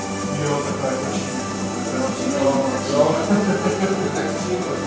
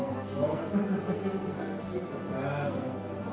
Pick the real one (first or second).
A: first